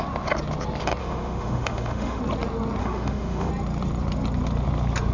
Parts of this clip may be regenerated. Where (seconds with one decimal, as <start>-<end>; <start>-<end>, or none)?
1.0-2.2; 2.8-3.5